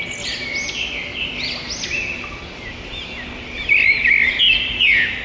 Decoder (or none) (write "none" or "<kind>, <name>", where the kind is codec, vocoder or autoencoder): none